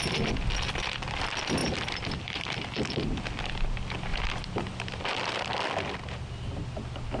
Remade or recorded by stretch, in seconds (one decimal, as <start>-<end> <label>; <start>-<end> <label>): 0.0-1.6 recorded; 1.6-2.9 remade; 2.9-4.1 recorded; 4.1-5.4 remade; 5.4-7.2 recorded